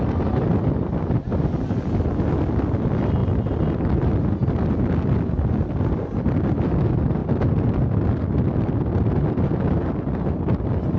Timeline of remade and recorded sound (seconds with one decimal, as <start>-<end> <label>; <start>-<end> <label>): 0.0-11.0 recorded